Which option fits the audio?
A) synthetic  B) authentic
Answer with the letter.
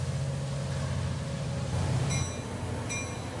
B